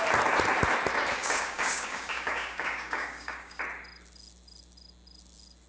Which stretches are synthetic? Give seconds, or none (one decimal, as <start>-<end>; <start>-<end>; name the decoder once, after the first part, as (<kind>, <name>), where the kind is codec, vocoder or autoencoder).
1.2-3.6 (codec, DAC)